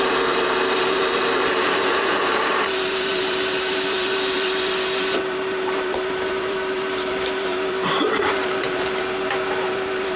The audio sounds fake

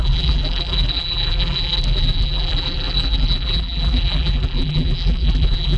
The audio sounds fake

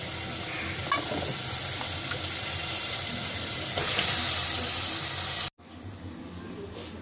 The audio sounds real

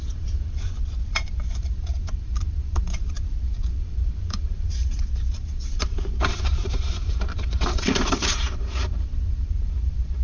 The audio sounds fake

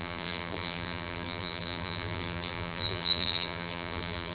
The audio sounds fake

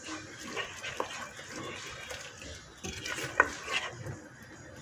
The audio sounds real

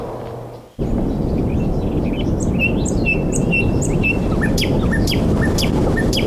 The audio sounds fake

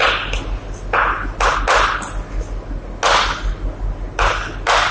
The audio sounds real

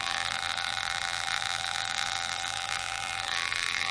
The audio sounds fake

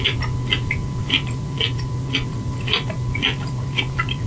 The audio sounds real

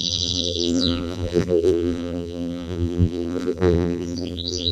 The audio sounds fake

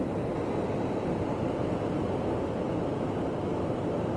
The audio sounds real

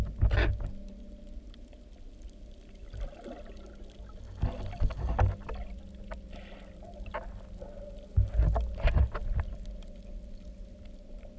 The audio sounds real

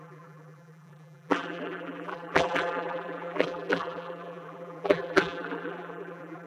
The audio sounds fake